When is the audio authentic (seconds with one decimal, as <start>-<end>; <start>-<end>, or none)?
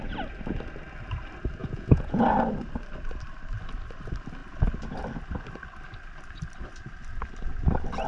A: 0.0-1.6; 2.2-8.1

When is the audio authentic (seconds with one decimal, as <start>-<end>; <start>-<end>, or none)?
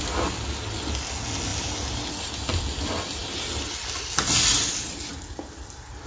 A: 0.0-6.1